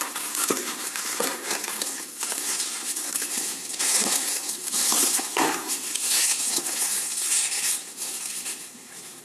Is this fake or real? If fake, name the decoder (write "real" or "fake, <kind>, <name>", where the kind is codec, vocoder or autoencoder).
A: fake, codec, SNAC